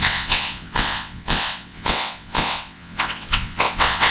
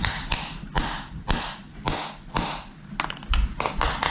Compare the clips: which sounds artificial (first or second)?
first